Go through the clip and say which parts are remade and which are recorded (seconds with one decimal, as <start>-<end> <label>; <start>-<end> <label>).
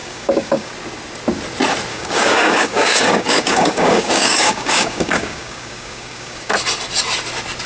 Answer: 0.0-0.7 remade; 0.7-1.9 recorded; 1.9-6.5 remade; 6.5-7.7 recorded